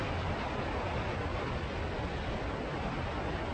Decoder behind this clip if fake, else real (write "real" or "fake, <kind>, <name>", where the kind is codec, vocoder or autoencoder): real